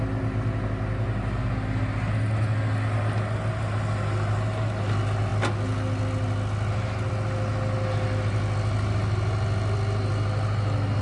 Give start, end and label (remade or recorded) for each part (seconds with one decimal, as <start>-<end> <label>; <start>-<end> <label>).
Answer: 0.0-11.0 recorded